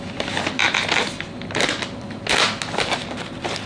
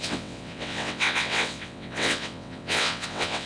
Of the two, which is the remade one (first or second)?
second